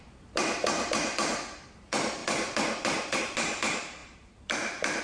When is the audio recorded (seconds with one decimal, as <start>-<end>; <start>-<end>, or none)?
none